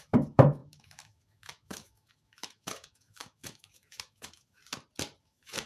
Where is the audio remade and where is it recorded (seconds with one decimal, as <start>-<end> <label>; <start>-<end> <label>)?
0.0-4.6 remade; 4.6-5.2 recorded; 5.2-5.7 remade